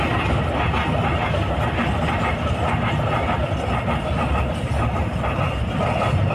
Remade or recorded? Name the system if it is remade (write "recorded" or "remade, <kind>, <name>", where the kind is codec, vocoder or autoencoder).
recorded